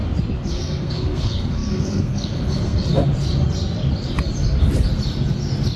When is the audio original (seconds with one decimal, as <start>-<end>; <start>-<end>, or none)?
0.0-0.5; 2.9-5.8